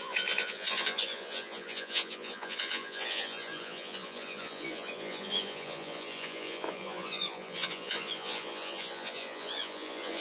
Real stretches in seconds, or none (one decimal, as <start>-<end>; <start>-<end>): none